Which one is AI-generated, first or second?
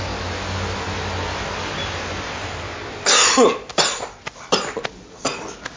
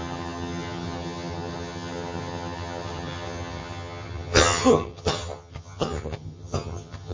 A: second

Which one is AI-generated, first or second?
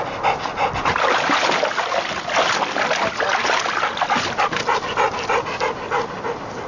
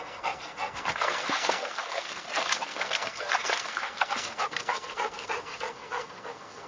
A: second